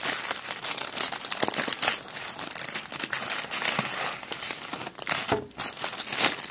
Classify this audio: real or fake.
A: real